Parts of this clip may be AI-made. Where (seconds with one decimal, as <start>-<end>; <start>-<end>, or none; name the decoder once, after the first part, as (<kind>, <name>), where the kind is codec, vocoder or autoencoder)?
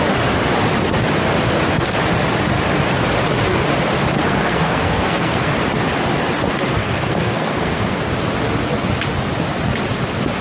4.2-5.5 (codec, SNAC); 6.8-8.0